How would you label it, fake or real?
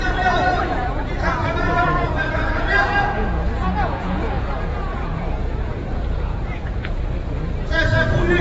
fake